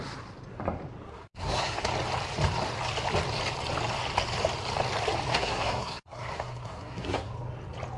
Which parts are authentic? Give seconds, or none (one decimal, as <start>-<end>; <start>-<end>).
0.0-1.1; 1.9-5.3; 7.3-8.0